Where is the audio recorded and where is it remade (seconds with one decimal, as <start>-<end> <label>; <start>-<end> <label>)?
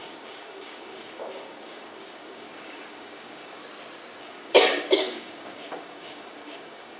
0.0-3.6 remade; 3.6-4.2 recorded; 4.2-7.0 remade